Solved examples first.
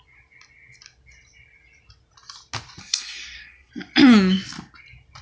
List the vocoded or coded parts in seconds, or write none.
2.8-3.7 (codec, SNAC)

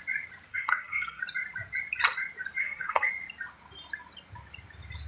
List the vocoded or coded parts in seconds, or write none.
0.5-1.2 (codec, SNAC); 2.6-3.1

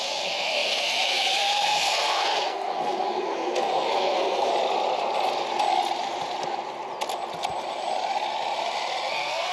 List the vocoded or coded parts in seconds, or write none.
0.0-4.5 (codec, SNAC); 9.1-9.5

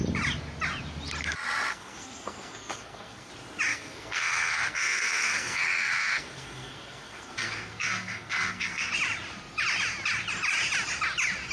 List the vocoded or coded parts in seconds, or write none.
1.7-3.3 (codec, SNAC); 3.7-8.9